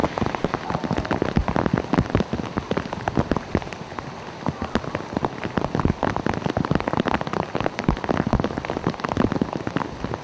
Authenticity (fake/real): real